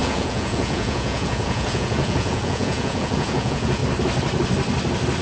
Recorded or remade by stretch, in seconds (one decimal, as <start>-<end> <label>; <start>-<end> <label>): 0.0-3.8 remade; 3.8-5.2 recorded